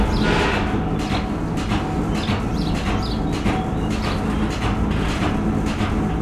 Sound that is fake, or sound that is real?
real